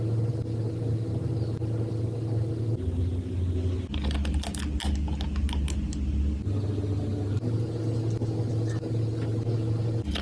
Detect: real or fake real